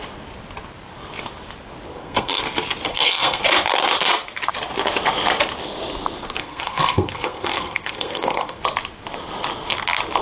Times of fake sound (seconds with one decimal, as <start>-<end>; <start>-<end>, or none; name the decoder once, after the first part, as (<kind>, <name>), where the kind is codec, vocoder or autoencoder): 1.9-2.4 (codec, SNAC); 2.9-3.4; 6.4-8.6